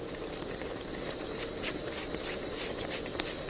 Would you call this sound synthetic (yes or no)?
no